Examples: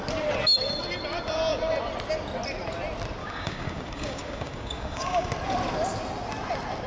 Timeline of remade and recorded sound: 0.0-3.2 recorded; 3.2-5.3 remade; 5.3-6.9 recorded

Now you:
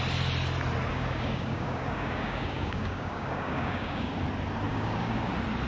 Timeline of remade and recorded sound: 0.0-0.9 recorded; 0.9-4.1 remade; 4.1-4.7 recorded; 4.7-5.3 remade; 5.3-5.7 recorded

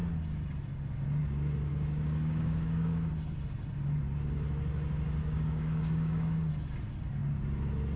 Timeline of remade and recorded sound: 0.0-1.7 recorded; 1.7-3.1 remade; 3.1-5.2 recorded; 5.2-6.5 remade; 6.5-8.0 recorded

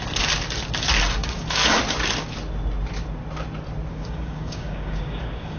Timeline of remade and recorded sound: 0.0-1.2 recorded; 1.2-1.6 remade; 1.6-3.9 recorded; 3.9-5.6 remade

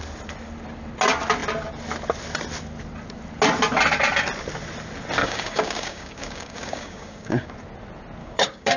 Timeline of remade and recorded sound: 0.0-5.2 recorded; 5.2-7.5 remade; 7.5-8.2 recorded; 8.2-8.8 remade

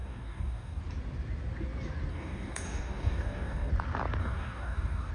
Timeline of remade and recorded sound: 0.0-0.8 remade; 0.8-2.1 recorded; 2.1-3.7 remade; 3.7-4.2 recorded; 4.2-5.1 remade

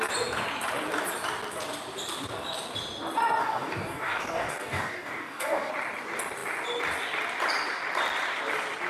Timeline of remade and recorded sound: 0.0-3.4 recorded; 3.4-5.7 remade; 5.7-8.9 recorded